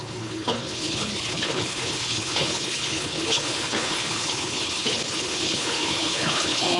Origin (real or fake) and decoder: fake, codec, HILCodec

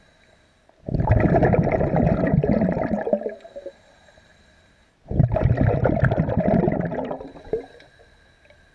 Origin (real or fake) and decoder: real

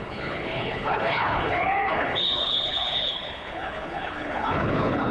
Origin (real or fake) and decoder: fake, codec, HILCodec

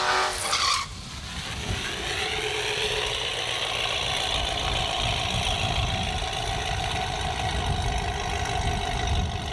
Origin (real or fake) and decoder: real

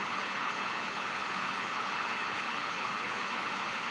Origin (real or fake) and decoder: fake, codec, HILCodec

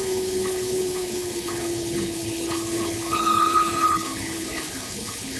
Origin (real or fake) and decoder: fake, codec, HILCodec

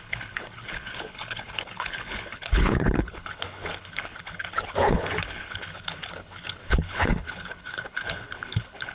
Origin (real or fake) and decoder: fake, codec, HILCodec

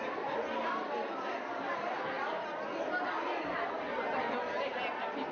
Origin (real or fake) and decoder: real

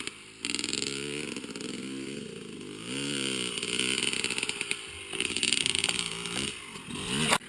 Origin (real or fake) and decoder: real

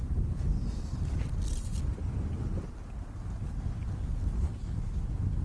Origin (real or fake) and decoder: real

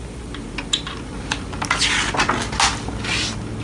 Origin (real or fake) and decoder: real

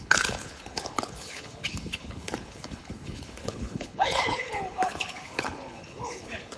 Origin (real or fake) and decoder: fake, codec, HILCodec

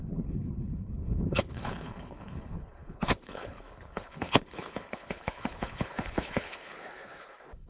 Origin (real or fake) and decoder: fake, codec, HILCodec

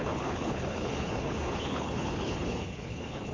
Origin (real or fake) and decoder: fake, codec, HILCodec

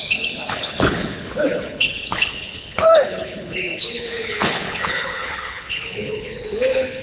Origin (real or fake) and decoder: fake, codec, HILCodec